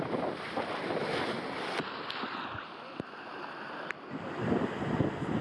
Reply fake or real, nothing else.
real